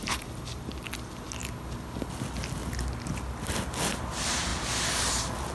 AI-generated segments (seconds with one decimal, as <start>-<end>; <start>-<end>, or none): none